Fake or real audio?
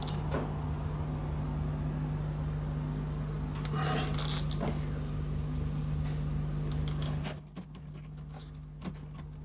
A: real